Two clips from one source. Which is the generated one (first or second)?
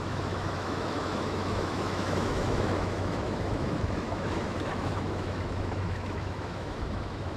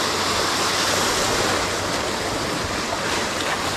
first